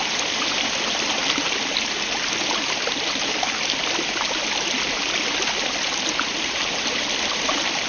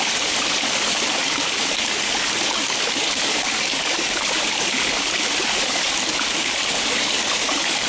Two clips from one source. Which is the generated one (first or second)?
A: second